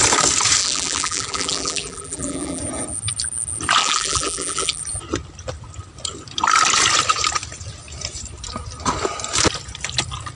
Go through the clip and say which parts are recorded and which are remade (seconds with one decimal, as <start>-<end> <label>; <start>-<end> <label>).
0.0-0.6 recorded; 0.6-2.6 remade; 2.6-3.8 recorded; 3.8-4.8 remade; 4.8-10.4 recorded